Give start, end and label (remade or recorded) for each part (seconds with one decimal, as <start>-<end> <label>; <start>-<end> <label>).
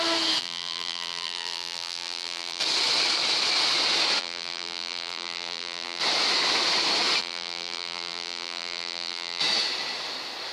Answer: 0.0-0.4 recorded; 0.4-2.6 remade; 2.6-4.2 recorded; 4.2-6.0 remade; 6.0-7.2 recorded; 7.2-9.4 remade; 9.4-10.5 recorded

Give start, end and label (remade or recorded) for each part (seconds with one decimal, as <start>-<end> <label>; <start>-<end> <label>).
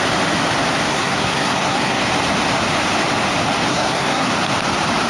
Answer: 0.0-0.9 recorded; 0.9-2.0 remade; 2.0-3.7 recorded; 3.7-4.3 remade; 4.3-5.1 recorded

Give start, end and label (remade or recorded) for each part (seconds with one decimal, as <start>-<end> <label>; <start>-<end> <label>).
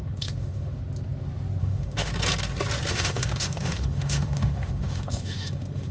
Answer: 0.0-0.8 remade; 0.8-1.6 recorded; 1.6-2.1 remade; 2.1-2.9 recorded; 2.9-5.9 remade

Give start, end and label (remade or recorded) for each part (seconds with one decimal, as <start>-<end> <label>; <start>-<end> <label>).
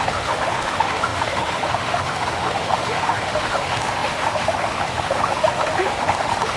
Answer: 0.0-6.6 remade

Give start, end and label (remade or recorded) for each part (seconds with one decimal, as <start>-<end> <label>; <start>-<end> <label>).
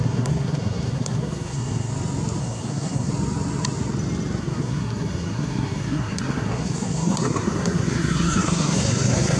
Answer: 0.0-1.9 remade; 1.9-2.4 recorded; 2.4-3.1 remade; 3.1-4.4 recorded; 4.4-9.4 remade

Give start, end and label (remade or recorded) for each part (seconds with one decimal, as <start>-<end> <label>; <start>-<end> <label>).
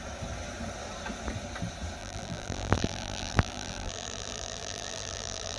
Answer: 0.0-2.0 recorded; 2.0-5.6 remade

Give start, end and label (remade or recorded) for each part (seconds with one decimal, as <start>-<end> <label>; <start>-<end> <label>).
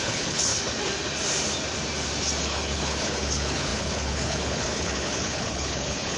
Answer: 0.0-0.5 remade; 0.5-2.4 recorded; 2.4-6.2 remade